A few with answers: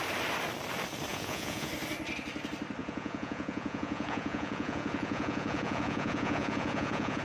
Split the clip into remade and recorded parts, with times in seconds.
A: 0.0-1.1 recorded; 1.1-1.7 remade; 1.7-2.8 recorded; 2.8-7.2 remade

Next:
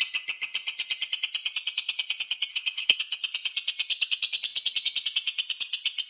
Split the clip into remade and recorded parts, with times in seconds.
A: 0.0-2.5 recorded; 2.5-3.0 remade; 3.0-6.1 recorded

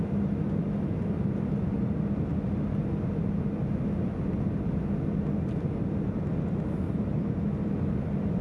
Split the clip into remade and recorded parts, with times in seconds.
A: 0.0-8.4 recorded

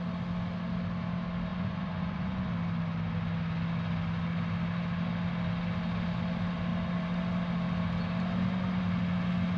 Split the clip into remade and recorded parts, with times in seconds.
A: 0.0-1.5 recorded; 1.5-2.5 remade; 2.5-9.6 recorded